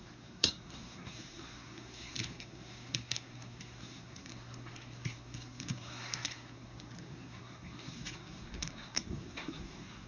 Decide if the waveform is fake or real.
fake